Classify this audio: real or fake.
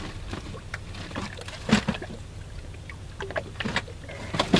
real